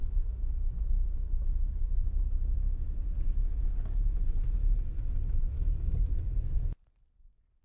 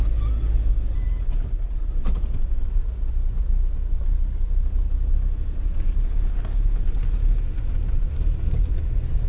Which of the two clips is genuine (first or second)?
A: second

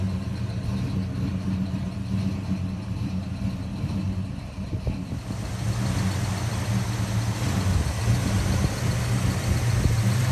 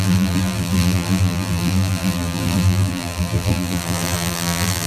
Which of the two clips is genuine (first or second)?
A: first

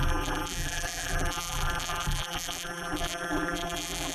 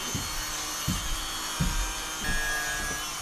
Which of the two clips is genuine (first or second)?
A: second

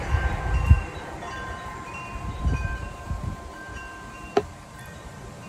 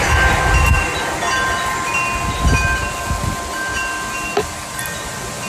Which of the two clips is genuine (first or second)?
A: second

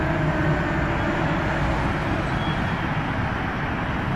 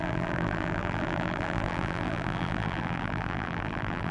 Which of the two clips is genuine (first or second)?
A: first